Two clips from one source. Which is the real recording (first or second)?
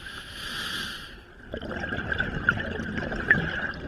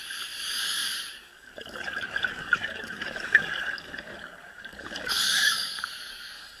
first